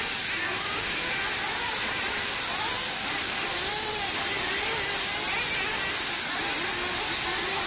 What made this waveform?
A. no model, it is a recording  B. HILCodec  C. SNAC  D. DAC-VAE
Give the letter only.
A